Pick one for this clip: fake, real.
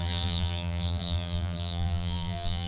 fake